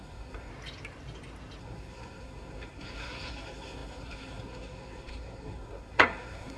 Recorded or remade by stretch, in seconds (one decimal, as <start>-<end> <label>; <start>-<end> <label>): 0.0-0.5 remade; 0.5-1.6 recorded; 1.6-6.6 remade